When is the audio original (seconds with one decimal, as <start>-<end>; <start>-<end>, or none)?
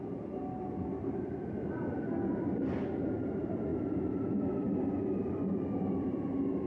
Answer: 0.0-6.7